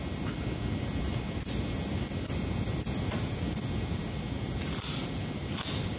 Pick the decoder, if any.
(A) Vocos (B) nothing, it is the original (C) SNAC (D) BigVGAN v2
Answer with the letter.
B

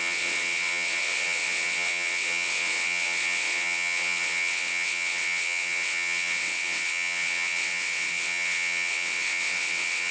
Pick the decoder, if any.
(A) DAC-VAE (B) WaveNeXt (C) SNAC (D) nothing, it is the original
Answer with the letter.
B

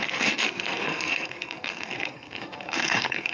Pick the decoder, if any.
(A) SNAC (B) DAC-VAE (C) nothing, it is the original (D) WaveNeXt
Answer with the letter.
A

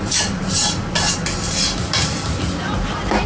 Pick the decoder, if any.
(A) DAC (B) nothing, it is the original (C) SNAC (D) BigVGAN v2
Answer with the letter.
B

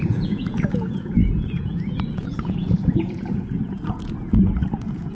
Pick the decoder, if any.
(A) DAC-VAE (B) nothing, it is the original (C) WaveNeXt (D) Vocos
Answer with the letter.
D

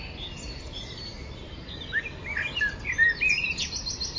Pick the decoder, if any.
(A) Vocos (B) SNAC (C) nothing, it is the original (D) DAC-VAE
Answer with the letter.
C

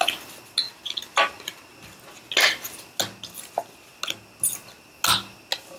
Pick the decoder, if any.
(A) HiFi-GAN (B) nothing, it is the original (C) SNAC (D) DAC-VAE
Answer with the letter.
B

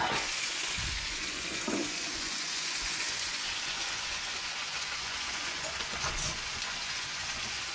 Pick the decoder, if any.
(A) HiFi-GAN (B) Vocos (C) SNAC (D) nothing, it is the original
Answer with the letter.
B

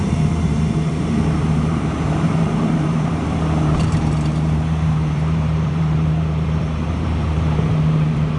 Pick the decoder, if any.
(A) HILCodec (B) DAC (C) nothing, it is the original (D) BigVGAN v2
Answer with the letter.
D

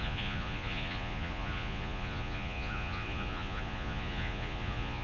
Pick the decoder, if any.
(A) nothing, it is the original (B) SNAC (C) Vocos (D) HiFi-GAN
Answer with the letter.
C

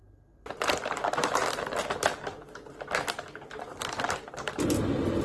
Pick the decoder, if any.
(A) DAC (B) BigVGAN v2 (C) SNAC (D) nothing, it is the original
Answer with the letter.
D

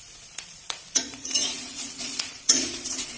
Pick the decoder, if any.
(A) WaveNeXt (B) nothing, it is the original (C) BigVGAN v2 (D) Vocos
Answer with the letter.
D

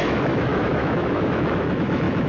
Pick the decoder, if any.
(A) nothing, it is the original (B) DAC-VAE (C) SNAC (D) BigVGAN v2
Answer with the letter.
B